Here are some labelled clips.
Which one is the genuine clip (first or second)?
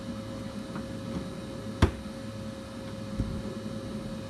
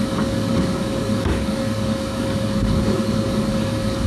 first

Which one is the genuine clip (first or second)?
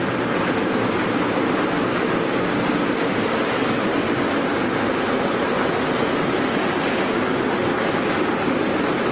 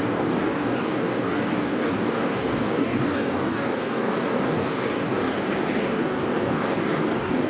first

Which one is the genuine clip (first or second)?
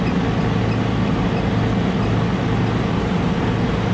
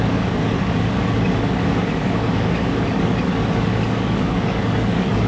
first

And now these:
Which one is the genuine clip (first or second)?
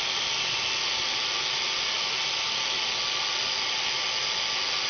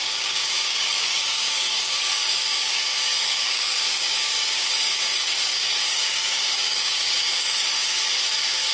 first